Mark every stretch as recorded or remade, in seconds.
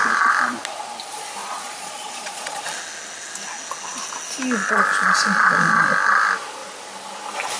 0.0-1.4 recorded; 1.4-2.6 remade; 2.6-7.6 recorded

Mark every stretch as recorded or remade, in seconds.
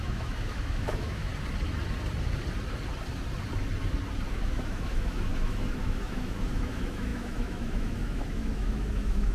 0.0-1.3 remade; 1.3-4.3 recorded; 4.3-9.3 remade